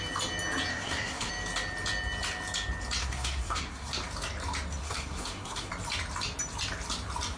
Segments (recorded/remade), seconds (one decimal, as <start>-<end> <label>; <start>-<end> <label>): 0.0-0.7 recorded; 0.7-1.3 remade; 1.3-3.0 recorded; 3.0-3.9 remade; 3.9-4.8 recorded; 4.8-5.7 remade; 5.7-7.4 recorded